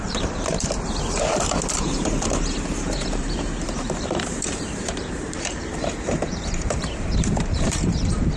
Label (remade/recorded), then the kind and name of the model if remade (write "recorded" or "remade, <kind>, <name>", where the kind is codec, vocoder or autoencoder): remade, vocoder, BigVGAN v2